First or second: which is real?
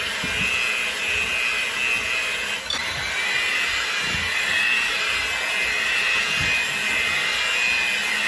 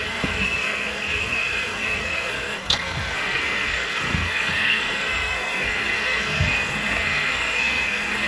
first